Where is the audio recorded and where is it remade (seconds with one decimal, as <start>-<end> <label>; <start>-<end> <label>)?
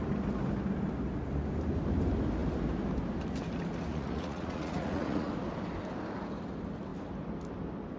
0.0-3.9 recorded; 3.9-5.3 remade; 5.3-8.0 recorded